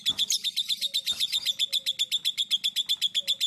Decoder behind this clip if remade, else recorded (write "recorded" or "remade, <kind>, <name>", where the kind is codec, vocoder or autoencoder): recorded